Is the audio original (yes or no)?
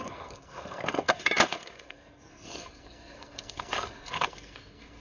no